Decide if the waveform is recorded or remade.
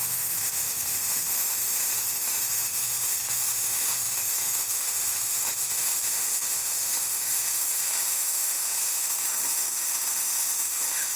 remade